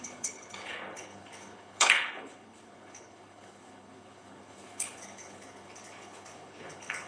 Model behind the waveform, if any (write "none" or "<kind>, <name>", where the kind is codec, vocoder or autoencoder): codec, HILCodec